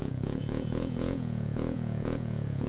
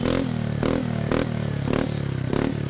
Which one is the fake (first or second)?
first